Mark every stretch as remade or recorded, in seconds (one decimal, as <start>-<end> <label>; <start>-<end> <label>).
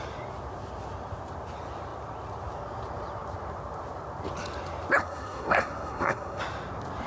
0.0-5.0 recorded; 5.0-6.4 remade; 6.4-7.1 recorded